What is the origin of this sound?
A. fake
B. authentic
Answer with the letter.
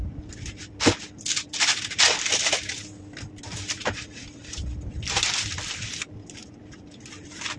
B